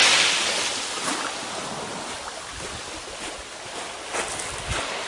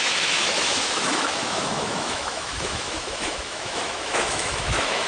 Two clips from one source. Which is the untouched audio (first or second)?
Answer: first